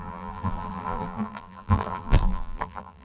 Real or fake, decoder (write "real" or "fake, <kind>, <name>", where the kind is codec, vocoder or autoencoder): fake, vocoder, BigVGAN v2